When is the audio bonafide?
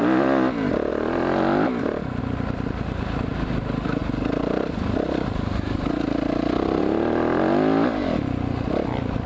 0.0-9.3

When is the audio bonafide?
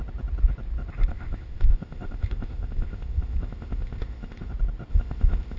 0.0-1.1; 4.5-4.9